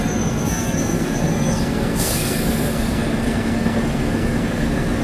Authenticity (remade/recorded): remade